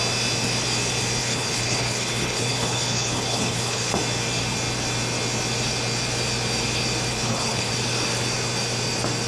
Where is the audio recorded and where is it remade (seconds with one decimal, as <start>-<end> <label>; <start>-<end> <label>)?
0.0-1.2 recorded; 1.2-3.9 remade; 3.9-7.1 recorded; 7.1-7.7 remade; 7.7-9.3 recorded